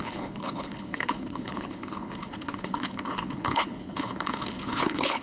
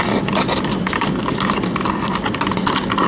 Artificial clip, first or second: first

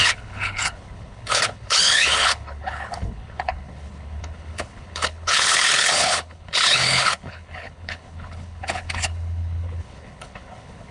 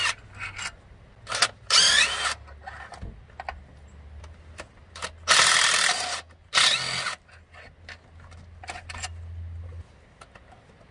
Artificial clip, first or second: first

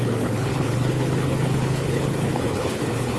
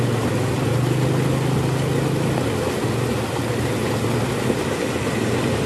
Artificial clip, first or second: first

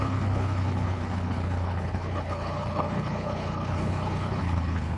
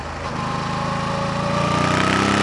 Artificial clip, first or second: first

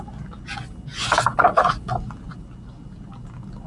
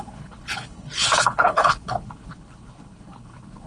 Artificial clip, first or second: second